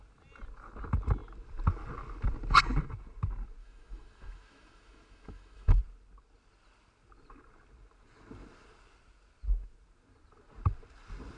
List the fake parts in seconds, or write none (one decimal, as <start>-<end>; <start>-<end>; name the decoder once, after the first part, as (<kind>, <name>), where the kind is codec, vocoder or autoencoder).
3.6-5.8 (autoencoder, DAC-VAE)